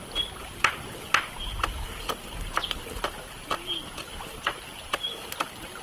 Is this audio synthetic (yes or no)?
no